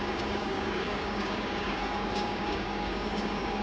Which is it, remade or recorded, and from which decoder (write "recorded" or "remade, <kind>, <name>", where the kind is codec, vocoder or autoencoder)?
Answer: remade, codec, DAC